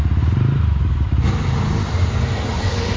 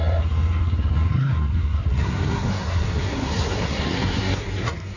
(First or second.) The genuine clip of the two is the first